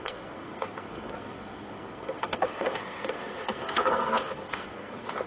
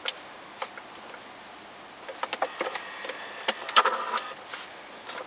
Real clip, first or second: second